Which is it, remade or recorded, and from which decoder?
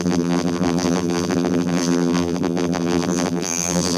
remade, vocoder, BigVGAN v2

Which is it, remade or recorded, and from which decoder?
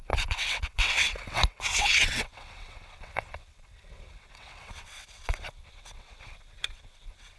remade, vocoder, WaveNeXt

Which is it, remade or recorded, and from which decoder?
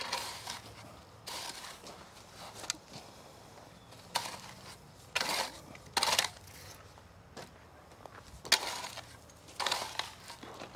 recorded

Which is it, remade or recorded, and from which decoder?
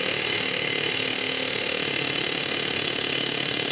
remade, autoencoder, DAC-VAE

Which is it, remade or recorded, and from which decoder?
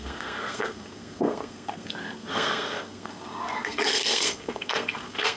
remade, codec, SNAC